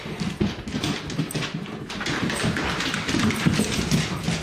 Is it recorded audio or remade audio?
remade